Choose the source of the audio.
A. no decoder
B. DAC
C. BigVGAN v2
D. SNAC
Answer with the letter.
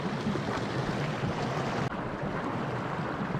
C